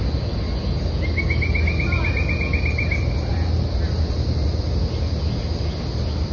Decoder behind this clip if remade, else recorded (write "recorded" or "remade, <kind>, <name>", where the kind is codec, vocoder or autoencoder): recorded